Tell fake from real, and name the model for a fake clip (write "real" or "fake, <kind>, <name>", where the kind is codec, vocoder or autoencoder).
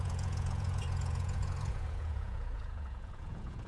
fake, vocoder, Vocos